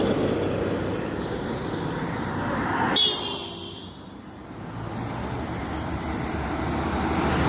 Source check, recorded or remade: recorded